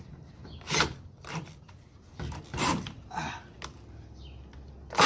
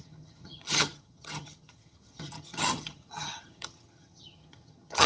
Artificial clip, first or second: second